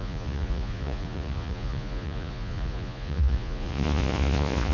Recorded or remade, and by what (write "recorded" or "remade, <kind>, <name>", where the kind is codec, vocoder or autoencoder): remade, vocoder, Vocos